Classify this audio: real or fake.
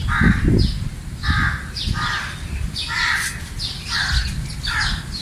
real